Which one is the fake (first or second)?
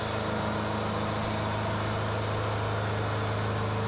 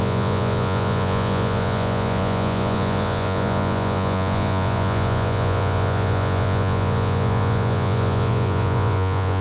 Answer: second